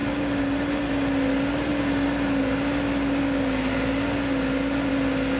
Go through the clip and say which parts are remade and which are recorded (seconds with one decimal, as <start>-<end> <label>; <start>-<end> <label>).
0.0-5.4 recorded